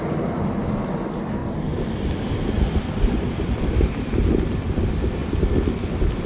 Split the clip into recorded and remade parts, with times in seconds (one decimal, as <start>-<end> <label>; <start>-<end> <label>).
0.0-1.4 recorded; 1.4-3.6 remade; 3.6-5.2 recorded; 5.2-6.3 remade